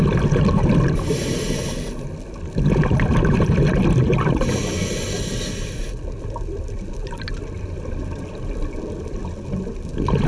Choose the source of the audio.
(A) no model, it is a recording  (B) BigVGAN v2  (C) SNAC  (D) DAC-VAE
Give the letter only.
A